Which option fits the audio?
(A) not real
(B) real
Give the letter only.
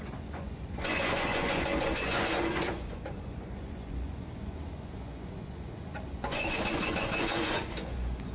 A